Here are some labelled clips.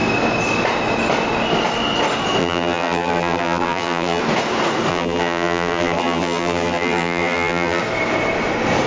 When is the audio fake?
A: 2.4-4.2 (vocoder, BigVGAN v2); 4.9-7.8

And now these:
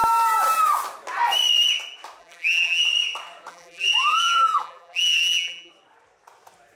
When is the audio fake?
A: 2.2-2.8 (vocoder, BigVGAN v2); 3.5-5.7

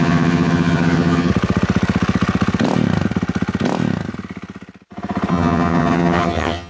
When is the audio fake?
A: 0.0-1.3 (vocoder, HiFi-GAN); 5.3-6.7